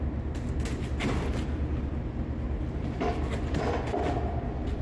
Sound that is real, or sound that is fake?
real